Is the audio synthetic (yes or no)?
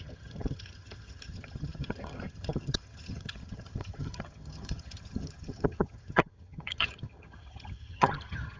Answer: yes